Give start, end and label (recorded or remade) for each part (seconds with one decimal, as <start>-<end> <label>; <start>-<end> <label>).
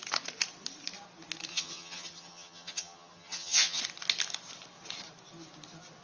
0.0-1.5 recorded; 1.5-3.8 remade; 3.8-6.0 recorded